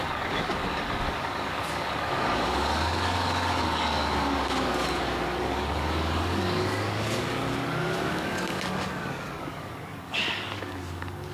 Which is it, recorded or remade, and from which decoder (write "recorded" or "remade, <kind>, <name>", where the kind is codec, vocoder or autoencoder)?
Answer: remade, codec, DAC